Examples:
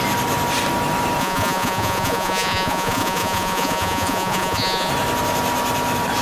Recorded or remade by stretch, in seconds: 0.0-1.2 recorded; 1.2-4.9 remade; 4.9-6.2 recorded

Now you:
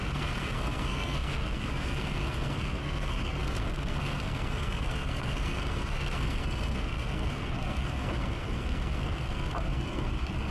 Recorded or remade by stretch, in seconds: 0.0-10.5 remade

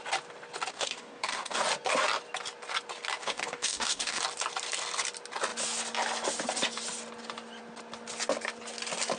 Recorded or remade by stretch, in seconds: 0.0-0.7 recorded; 0.7-1.6 remade; 1.6-3.2 recorded; 3.2-4.2 remade; 4.2-9.2 recorded